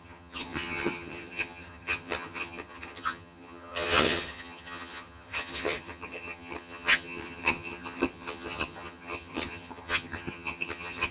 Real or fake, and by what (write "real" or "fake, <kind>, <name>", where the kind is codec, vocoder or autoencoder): fake, vocoder, HiFi-GAN